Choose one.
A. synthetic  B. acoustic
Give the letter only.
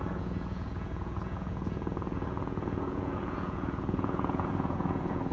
A